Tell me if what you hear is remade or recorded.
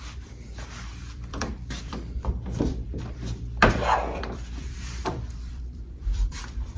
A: remade